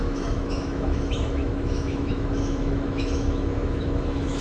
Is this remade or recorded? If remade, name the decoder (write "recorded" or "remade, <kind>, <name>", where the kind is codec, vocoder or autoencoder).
remade, autoencoder, DAC-VAE